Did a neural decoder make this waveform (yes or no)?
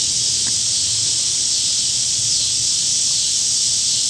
no